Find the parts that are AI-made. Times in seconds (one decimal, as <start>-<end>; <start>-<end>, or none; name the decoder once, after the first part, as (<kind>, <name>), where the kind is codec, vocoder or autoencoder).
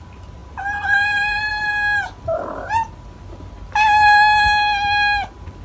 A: none